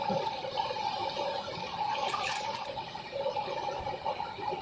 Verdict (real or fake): real